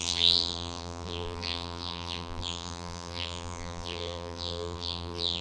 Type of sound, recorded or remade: remade